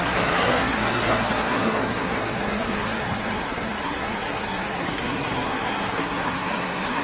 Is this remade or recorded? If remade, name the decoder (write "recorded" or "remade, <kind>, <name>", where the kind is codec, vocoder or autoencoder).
remade, codec, SNAC